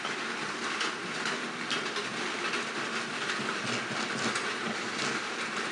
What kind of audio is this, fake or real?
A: real